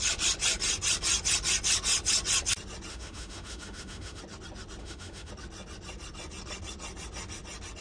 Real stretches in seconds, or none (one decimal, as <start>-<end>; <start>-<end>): 0.0-2.9; 4.2-4.8; 5.3-7.8